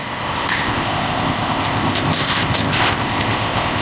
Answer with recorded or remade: remade